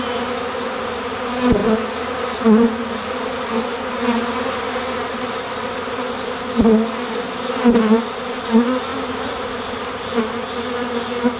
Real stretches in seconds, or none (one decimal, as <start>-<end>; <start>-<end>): 0.0-11.4